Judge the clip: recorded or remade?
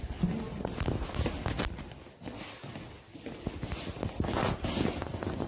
recorded